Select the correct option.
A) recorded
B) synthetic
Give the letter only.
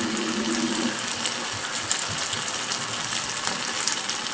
A